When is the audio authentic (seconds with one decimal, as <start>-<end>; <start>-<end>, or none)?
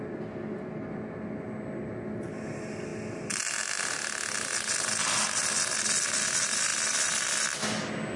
0.0-8.2